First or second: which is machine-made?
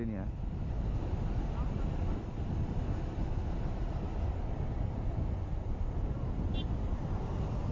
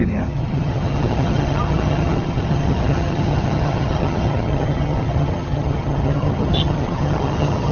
second